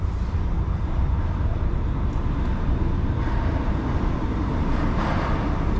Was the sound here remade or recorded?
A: recorded